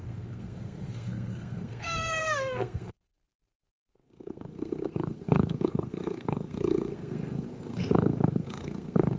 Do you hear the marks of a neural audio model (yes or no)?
yes